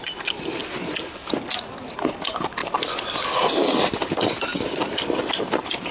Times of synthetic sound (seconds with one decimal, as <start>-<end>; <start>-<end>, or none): 0.6-1.4; 4.5-5.2